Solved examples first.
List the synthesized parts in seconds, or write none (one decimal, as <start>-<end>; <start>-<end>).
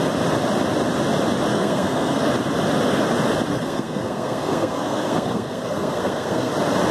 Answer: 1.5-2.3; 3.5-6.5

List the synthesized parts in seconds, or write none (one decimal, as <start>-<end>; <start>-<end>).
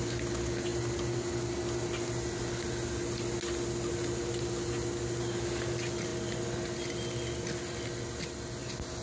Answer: none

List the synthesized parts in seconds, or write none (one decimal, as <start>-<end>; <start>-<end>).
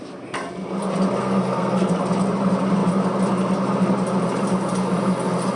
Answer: 1.2-1.9